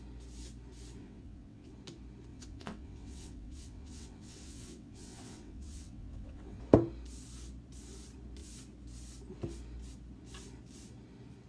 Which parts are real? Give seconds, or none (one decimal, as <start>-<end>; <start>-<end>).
0.0-1.0; 1.7-2.3; 6.6-11.5